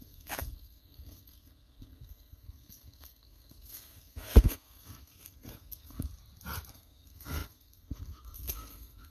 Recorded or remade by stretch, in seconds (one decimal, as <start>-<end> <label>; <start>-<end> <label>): 0.0-6.1 remade; 6.1-6.7 recorded; 6.7-9.1 remade